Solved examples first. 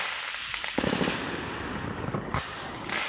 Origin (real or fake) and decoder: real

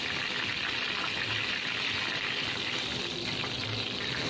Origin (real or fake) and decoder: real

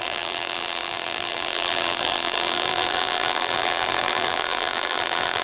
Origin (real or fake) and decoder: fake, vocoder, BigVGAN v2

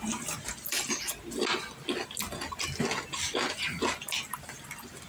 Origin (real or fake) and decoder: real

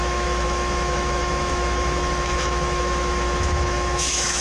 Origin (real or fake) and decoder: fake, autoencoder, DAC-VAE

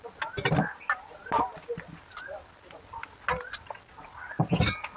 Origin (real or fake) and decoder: real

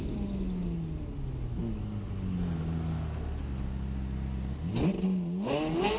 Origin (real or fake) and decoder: real